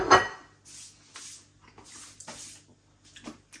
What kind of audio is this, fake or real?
real